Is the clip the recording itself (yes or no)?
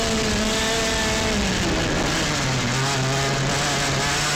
yes